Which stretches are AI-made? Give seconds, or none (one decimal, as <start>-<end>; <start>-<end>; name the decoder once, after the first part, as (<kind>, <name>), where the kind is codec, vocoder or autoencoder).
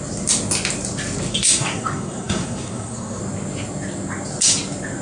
1.3-3.2 (codec, SNAC)